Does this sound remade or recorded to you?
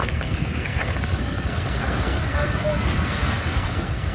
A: remade